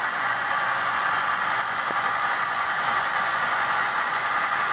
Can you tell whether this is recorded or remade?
remade